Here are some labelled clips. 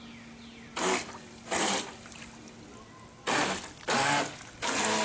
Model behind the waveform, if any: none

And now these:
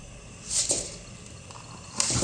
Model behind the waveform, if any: none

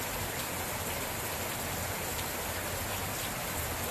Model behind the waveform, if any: none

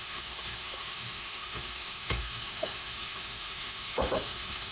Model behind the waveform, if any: autoencoder, DAC-VAE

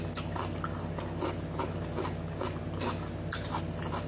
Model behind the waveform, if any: none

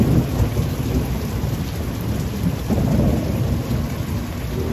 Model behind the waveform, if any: none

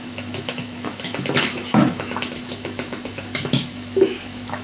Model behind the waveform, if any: autoencoder, DAC-VAE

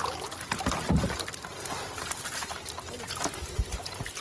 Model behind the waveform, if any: none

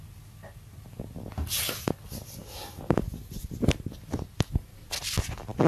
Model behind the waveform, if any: none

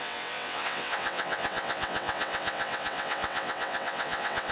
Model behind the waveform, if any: vocoder, WaveNeXt